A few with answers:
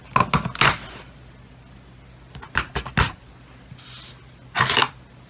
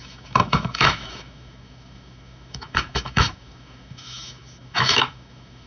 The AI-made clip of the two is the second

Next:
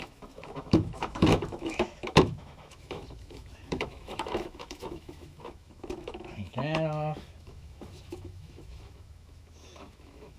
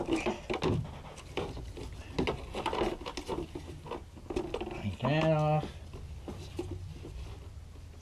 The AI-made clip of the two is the first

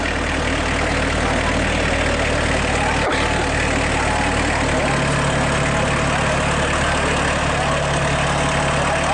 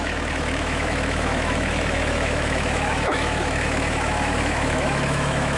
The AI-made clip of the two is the second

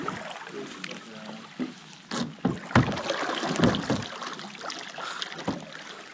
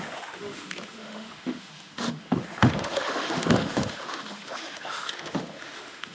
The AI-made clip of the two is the second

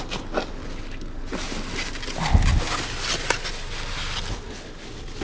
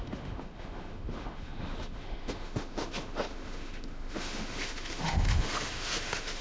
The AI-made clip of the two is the second